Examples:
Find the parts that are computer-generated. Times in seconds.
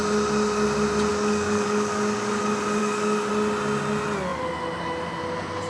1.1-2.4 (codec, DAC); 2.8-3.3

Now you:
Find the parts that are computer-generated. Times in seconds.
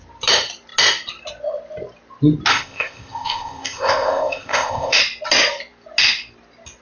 2.5-5.0 (codec, ZipCodec)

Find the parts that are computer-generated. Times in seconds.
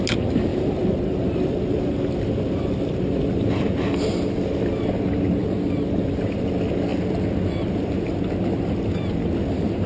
0.5-3.5 (vocoder, BigVGAN v2); 5.4-6.4